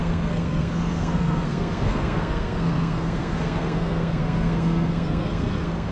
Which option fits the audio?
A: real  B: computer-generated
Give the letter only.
B